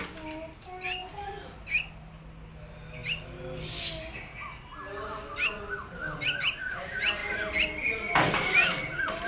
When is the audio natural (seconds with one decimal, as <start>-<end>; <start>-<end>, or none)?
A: 0.0-9.3